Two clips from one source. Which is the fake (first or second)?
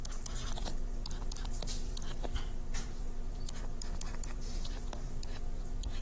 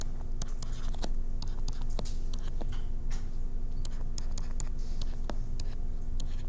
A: first